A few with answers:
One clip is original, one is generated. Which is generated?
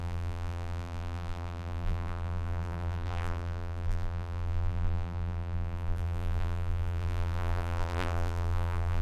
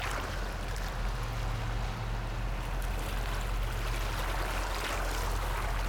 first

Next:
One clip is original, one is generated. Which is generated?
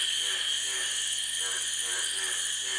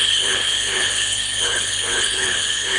second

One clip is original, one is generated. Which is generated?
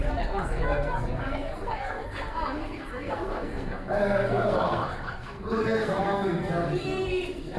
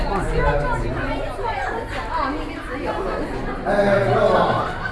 first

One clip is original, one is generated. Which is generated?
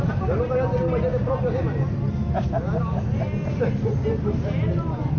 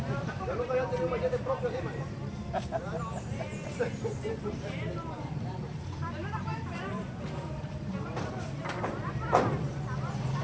second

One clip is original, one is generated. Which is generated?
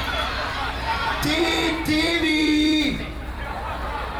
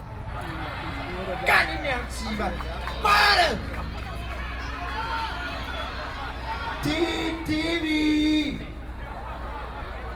first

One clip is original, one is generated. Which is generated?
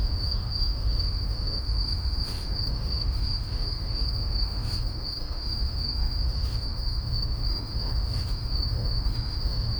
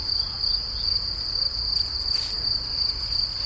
first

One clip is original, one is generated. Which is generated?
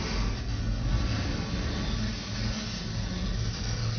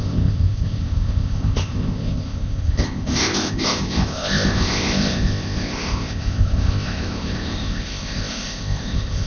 second